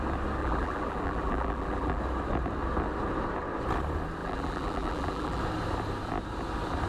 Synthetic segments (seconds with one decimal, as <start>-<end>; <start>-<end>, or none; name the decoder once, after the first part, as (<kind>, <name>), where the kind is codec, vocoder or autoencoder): 0.4-2.0 (vocoder, BigVGAN v2); 4.2-5.4